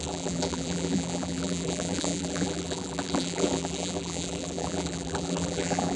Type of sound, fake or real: fake